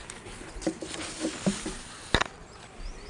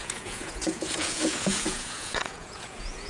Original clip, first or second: first